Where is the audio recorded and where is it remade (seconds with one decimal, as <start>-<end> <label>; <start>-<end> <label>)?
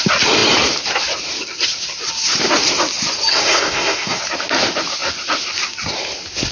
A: 0.0-3.3 recorded; 3.3-4.2 remade; 4.2-6.5 recorded